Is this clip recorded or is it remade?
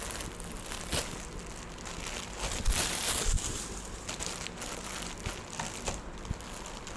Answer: recorded